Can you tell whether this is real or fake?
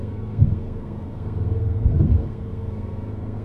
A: fake